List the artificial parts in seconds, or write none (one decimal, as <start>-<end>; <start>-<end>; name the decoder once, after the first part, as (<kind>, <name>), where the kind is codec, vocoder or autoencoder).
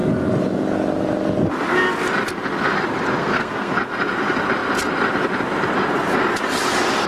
3.2-3.7 (codec, SNAC)